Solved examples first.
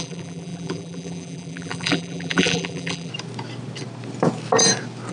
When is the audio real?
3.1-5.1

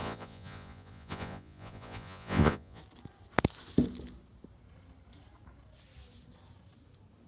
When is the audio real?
2.8-7.3

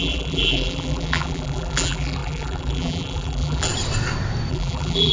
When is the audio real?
3.7-4.5

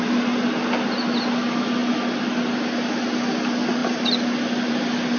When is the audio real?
0.0-5.2